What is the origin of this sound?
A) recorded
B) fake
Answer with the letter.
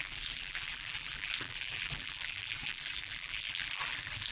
B